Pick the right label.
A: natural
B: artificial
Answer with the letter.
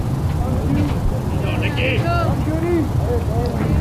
A